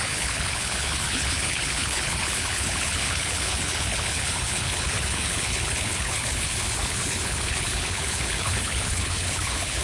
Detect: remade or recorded remade